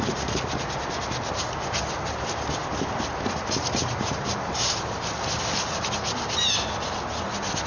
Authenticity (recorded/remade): recorded